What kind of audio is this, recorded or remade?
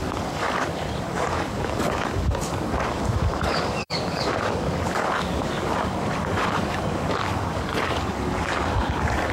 remade